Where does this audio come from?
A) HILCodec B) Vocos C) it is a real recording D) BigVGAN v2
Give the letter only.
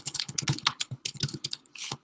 A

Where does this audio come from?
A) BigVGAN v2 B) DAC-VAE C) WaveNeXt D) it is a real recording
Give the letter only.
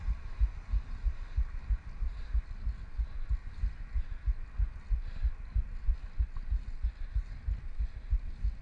D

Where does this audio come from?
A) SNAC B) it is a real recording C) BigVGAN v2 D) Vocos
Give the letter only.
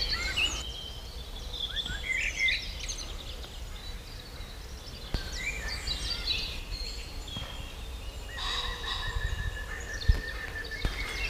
B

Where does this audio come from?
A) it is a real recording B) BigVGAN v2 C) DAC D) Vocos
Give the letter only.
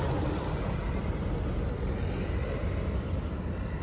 A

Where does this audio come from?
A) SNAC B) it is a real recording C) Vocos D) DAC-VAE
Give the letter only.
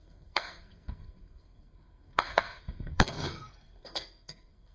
A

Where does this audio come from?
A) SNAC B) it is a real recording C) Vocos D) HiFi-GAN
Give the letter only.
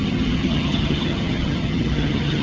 D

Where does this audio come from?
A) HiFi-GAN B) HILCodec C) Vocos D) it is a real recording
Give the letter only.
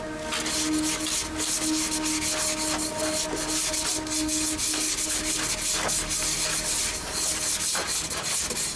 D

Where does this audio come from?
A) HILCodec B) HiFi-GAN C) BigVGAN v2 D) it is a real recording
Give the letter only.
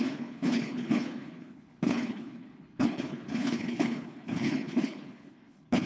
A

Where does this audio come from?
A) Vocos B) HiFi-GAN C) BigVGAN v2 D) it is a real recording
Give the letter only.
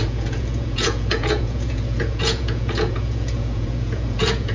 A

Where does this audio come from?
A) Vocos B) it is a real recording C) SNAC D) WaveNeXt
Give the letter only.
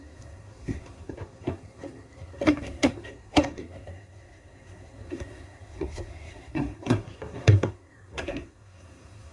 C